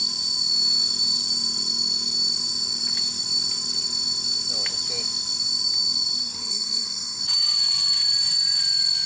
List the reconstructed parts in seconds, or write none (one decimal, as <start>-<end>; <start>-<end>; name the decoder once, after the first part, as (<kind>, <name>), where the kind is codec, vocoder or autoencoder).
6.2-7.2 (codec, SNAC)